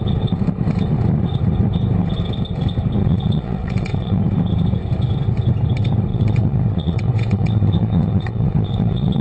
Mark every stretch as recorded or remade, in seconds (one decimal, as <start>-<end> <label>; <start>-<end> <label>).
0.0-3.0 recorded; 3.0-4.2 remade; 4.2-6.1 recorded; 6.1-9.2 remade